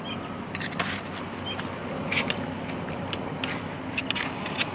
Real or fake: real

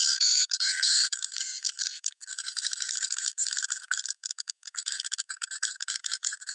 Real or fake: fake